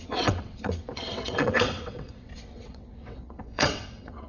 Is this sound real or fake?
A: fake